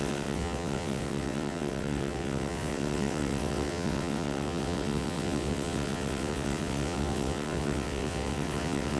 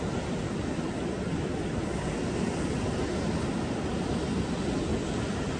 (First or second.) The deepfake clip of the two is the first